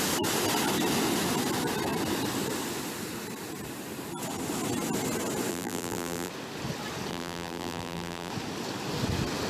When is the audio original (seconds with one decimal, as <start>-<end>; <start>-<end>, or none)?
0.0-5.5; 6.3-7.1; 8.3-9.5